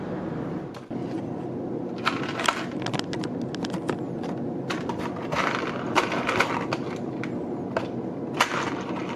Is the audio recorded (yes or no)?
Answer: yes